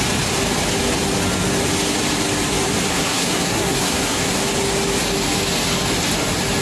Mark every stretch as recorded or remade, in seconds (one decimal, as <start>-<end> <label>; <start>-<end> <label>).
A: 0.0-2.9 recorded; 2.9-4.4 remade; 4.4-6.6 recorded